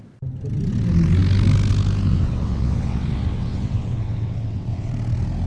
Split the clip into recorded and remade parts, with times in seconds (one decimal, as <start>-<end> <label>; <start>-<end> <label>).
0.0-2.1 recorded; 2.1-4.9 remade; 4.9-5.5 recorded